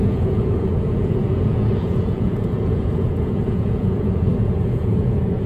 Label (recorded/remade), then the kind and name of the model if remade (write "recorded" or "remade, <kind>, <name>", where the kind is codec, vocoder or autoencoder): remade, vocoder, Vocos